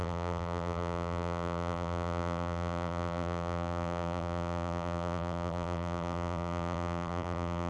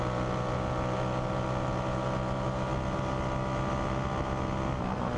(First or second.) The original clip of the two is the second